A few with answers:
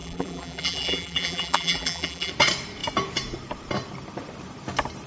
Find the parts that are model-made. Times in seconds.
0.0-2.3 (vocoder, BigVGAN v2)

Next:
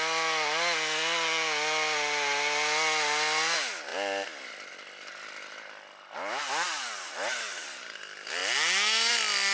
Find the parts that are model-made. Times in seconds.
3.9-7.1 (vocoder, BigVGAN v2)

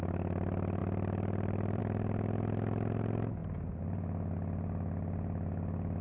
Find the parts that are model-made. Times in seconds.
0.8-1.8 (vocoder, BigVGAN v2)

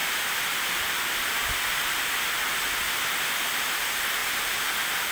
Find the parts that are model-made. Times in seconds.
none

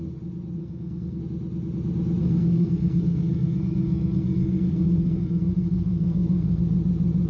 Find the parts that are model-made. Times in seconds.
0.6-1.2 (codec, SNAC); 2.2-6.6

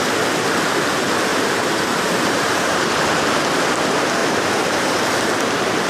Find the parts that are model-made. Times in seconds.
1.3-2.9 (vocoder, BigVGAN v2); 4.2-5.0

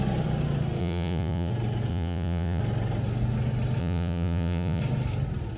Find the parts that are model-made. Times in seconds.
0.8-1.5 (vocoder, Vocos); 1.9-2.6; 3.8-4.8